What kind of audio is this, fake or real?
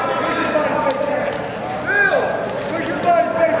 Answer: real